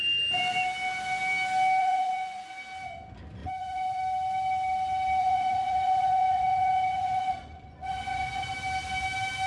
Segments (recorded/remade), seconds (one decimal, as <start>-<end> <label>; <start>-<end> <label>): 0.0-1.8 recorded; 1.8-2.5 remade; 2.5-3.4 recorded; 3.4-4.0 remade; 4.0-5.2 recorded; 5.2-8.5 remade; 8.5-9.5 recorded